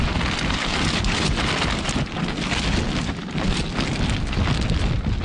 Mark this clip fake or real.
real